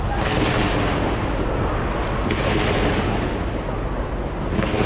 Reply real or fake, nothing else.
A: real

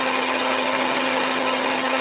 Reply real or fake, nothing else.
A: fake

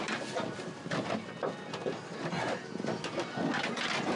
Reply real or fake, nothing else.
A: real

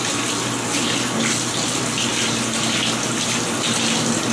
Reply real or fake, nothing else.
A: real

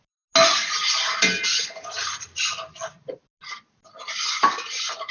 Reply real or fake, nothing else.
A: real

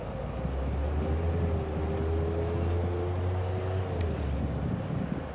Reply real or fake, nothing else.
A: real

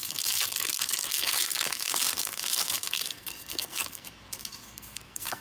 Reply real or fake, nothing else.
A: fake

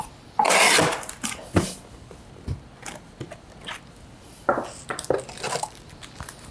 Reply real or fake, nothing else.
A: real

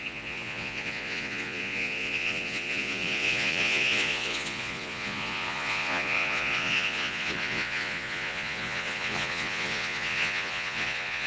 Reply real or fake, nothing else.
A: fake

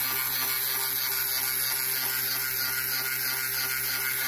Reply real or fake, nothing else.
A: real